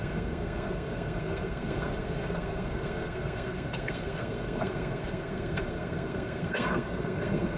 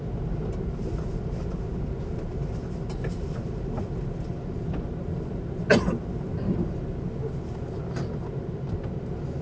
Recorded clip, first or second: second